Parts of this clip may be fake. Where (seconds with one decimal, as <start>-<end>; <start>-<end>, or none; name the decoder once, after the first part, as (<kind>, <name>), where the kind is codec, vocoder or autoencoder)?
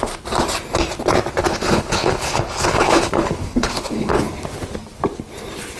1.4-4.1 (codec, HILCodec)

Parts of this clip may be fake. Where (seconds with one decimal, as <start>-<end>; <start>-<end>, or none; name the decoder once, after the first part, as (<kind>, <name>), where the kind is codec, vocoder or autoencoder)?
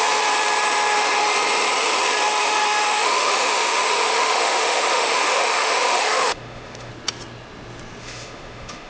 2.3-6.9 (autoencoder, DAC-VAE); 8.0-8.9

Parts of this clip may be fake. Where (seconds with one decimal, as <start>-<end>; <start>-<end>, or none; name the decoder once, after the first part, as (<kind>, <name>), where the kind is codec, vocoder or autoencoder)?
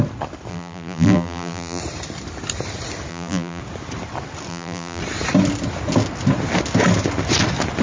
0.5-1.8 (vocoder, BigVGAN v2); 3.1-3.6; 4.5-5.0